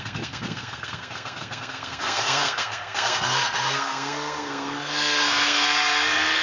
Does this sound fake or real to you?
fake